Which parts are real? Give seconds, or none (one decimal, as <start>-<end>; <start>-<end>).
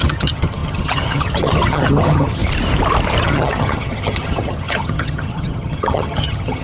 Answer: 2.4-3.2